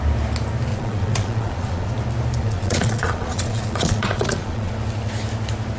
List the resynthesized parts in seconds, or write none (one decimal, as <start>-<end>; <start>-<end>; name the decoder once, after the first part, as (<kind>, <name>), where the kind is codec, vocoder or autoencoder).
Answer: 0.7-1.9 (vocoder, Vocos); 2.4-4.7